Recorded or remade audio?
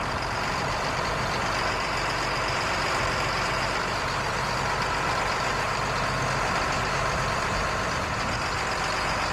remade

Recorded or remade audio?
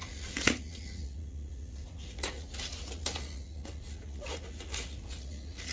remade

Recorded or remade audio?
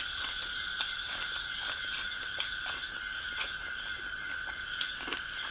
recorded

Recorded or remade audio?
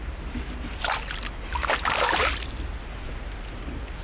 recorded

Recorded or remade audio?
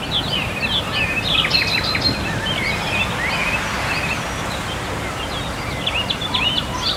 recorded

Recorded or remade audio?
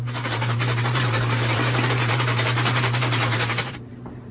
remade